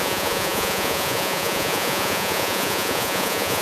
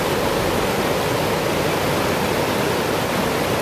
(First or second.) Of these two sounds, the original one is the second